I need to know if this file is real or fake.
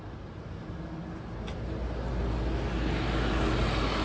real